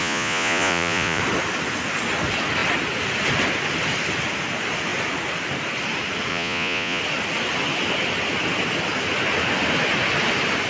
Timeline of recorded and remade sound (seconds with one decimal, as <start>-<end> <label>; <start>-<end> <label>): 0.0-1.2 remade; 1.2-6.3 recorded; 6.3-7.0 remade; 7.0-10.7 recorded